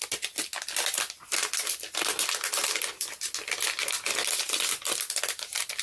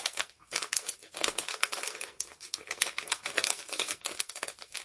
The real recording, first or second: first